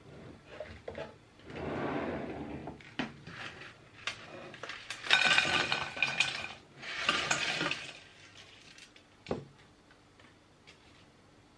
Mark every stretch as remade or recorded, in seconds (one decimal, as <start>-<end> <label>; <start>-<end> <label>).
0.0-11.6 recorded